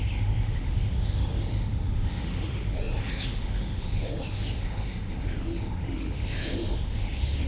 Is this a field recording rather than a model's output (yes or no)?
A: no